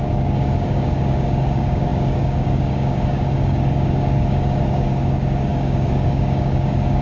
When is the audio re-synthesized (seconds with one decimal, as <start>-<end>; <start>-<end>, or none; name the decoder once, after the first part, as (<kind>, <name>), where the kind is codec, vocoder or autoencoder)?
0.0-7.0 (codec, DAC)